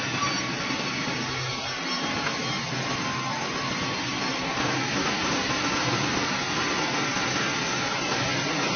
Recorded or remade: recorded